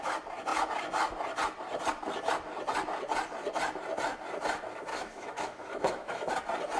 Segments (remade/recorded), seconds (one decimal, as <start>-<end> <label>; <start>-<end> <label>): 0.0-4.9 recorded; 4.9-6.3 remade; 6.3-6.8 recorded